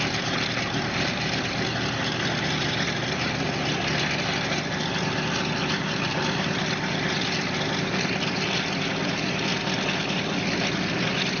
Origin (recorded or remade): recorded